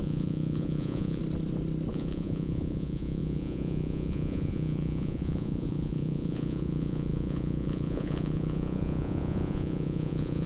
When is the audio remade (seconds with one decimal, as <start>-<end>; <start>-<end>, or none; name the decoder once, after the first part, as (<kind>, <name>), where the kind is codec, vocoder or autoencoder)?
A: 0.0-1.2 (vocoder, Vocos); 1.9-10.5